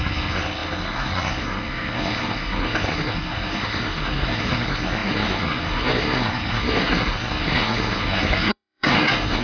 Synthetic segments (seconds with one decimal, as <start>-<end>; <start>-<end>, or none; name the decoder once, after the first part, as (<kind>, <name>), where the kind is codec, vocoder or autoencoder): 0.0-9.4 (codec, SNAC)